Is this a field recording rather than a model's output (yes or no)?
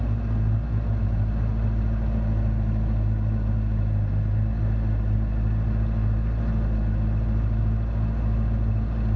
yes